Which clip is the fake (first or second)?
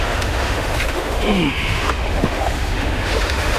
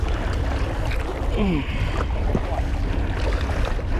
first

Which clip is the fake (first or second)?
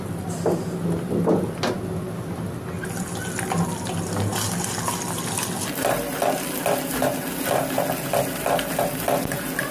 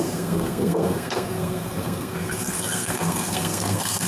second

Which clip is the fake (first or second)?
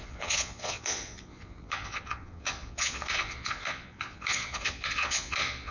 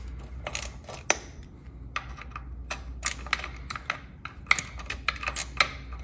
first